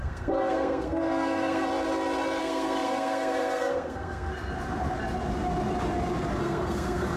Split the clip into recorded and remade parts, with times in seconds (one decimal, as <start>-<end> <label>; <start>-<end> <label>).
0.0-1.7 remade; 1.7-2.4 recorded; 2.4-4.3 remade; 4.3-6.4 recorded; 6.4-7.2 remade

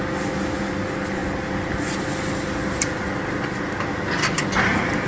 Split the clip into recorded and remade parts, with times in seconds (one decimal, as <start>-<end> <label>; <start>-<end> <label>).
0.0-5.1 recorded

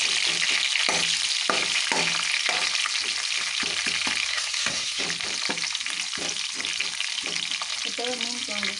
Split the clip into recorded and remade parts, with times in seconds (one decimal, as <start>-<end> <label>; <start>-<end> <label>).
0.0-4.3 recorded; 4.3-5.0 remade; 5.0-8.8 recorded

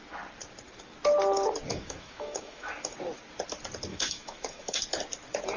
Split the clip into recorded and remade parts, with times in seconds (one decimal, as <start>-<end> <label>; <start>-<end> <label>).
0.0-1.7 recorded; 1.7-2.7 remade; 2.7-3.9 recorded; 3.9-4.8 remade; 4.8-5.6 recorded

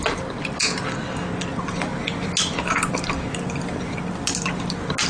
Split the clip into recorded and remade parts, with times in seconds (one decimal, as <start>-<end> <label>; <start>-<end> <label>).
0.0-5.1 recorded

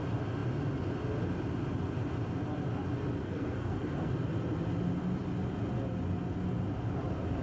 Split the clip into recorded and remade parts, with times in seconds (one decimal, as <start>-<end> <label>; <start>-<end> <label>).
0.0-3.2 recorded; 3.2-4.1 remade; 4.1-7.4 recorded

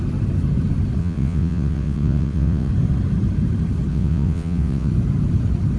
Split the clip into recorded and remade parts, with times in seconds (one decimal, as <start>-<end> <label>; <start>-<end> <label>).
0.0-1.0 recorded; 1.0-2.7 remade; 2.7-3.9 recorded; 3.9-4.9 remade; 4.9-5.8 recorded

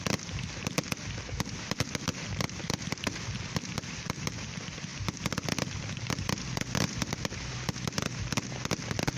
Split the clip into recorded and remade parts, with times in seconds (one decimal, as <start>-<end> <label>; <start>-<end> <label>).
0.0-9.2 recorded